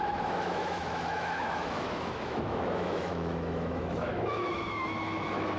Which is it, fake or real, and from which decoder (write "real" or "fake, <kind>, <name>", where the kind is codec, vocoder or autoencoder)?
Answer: fake, autoencoder, DAC-VAE